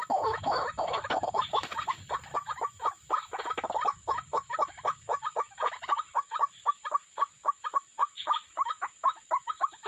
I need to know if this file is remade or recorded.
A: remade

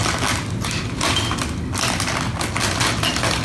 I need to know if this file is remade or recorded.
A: recorded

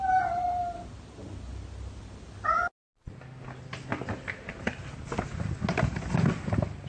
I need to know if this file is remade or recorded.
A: recorded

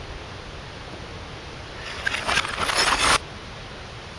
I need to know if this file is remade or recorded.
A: recorded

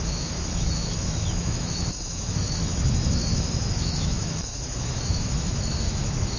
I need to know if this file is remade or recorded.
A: remade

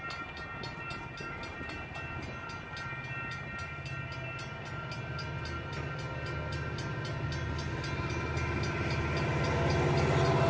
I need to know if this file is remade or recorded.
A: recorded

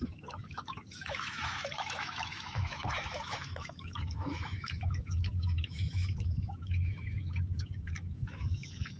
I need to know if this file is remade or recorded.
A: remade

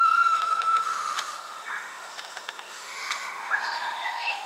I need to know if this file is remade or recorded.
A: remade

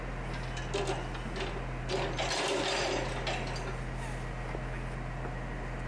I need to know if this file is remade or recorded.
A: recorded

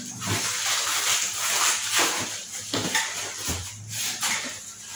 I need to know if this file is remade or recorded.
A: recorded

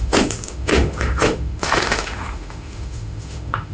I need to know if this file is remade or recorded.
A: remade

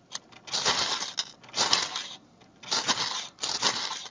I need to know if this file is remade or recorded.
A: recorded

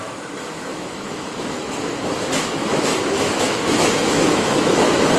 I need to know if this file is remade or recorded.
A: remade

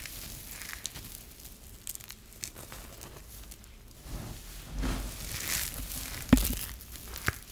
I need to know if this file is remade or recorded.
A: recorded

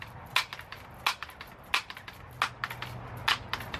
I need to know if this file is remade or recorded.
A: recorded